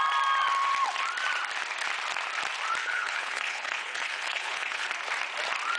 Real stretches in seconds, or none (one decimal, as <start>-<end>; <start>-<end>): 0.0-2.8; 4.9-5.8